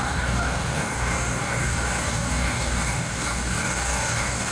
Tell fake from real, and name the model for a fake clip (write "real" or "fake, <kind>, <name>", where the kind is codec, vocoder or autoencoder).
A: fake, codec, DAC